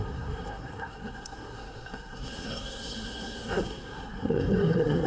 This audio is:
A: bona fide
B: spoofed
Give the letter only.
B